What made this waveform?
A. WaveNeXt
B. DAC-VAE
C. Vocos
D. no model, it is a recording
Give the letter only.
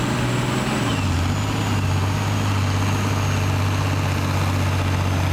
D